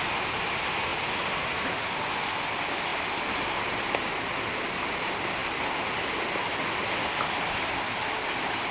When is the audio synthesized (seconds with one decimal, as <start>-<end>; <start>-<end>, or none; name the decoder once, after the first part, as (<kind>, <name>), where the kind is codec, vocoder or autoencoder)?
none